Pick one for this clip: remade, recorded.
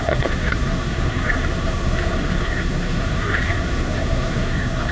remade